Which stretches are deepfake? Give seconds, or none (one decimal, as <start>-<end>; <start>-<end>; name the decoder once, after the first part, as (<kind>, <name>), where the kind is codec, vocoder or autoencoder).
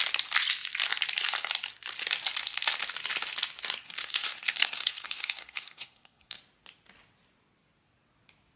3.8-6.4 (codec, SNAC)